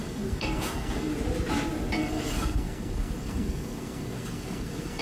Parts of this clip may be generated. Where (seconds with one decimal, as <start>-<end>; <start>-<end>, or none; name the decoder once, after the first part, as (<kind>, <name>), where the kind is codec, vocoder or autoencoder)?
0.0-1.1 (codec, SNAC); 2.0-5.0